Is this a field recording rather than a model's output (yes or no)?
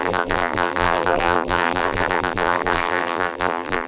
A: no